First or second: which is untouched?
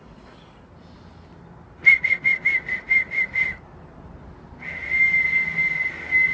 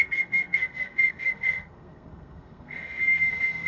first